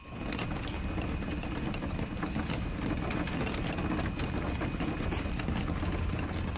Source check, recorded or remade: recorded